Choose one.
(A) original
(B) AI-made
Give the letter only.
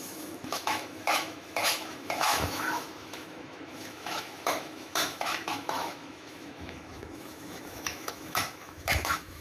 B